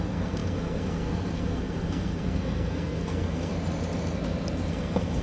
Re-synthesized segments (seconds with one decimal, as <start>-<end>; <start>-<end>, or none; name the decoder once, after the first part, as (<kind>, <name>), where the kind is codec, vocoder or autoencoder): 0.0-3.5 (codec, SNAC); 4.7-5.2